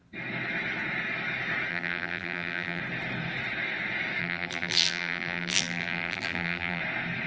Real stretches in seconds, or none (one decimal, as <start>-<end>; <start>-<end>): 0.0-1.7; 2.8-4.2; 6.8-7.3